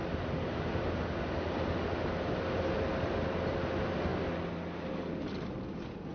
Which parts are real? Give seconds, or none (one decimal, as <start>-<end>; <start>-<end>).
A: 0.0-6.1